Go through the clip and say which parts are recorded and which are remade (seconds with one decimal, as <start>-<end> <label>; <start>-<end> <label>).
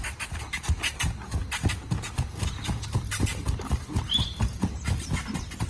0.0-5.7 recorded